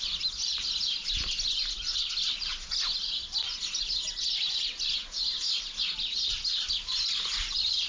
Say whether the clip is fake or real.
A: real